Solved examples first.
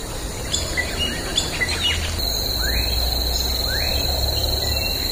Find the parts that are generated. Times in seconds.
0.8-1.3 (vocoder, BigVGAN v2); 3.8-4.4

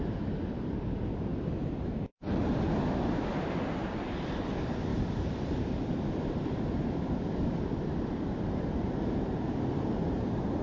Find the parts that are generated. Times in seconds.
4.9-9.0 (vocoder, BigVGAN v2)

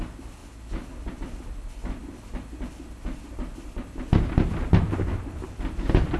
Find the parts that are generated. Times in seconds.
none